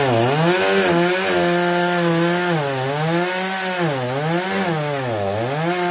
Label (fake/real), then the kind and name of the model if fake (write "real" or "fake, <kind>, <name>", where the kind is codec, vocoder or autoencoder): real